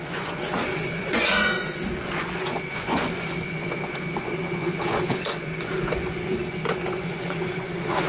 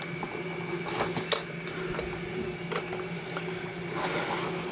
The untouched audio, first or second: second